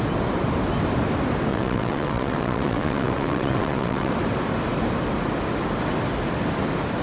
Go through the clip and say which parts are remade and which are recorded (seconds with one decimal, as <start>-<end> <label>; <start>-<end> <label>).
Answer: 0.0-1.5 recorded; 1.5-4.1 remade; 4.1-7.0 recorded